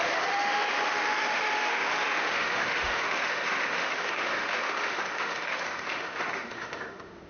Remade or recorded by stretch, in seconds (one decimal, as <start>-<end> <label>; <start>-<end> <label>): 0.0-7.3 remade